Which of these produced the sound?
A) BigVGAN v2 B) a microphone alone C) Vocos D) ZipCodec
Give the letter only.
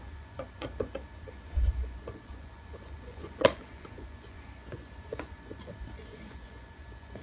C